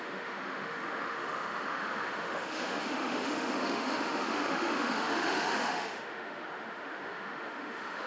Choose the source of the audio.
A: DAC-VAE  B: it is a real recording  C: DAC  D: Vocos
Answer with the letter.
A